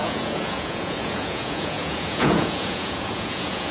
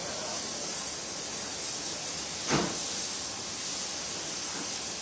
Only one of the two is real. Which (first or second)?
second